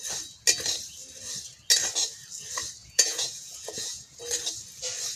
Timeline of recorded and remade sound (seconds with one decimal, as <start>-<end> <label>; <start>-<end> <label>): 0.0-2.8 recorded; 2.8-4.2 remade; 4.2-5.2 recorded